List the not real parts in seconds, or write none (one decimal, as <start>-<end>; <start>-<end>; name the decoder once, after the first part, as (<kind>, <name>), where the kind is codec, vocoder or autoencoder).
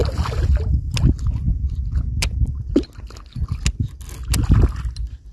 none